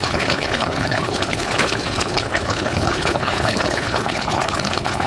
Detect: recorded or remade remade